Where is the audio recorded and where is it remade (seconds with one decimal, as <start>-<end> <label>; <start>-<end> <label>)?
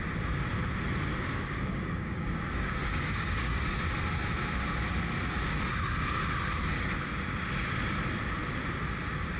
0.0-1.1 recorded; 1.1-3.8 remade; 3.8-5.7 recorded; 5.7-6.2 remade; 6.2-9.4 recorded